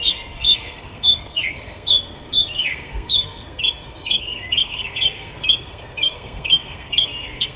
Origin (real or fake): fake